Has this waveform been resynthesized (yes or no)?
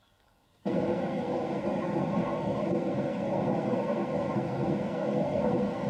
yes